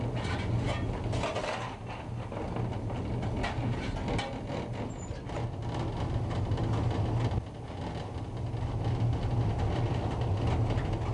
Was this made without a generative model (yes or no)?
yes